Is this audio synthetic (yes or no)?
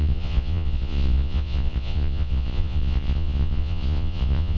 yes